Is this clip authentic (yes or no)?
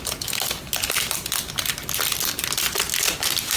yes